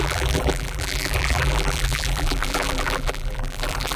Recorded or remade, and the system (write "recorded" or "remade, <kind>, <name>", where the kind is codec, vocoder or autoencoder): remade, vocoder, BigVGAN v2